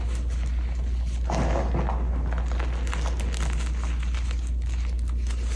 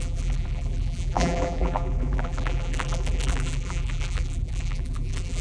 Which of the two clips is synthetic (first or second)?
second